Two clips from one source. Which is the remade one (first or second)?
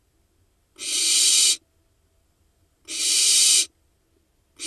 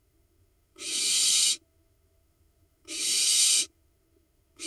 second